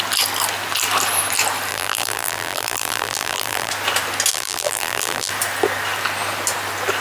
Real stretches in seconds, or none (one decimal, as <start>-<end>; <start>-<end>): 0.0-1.7; 3.7-4.3; 5.3-7.0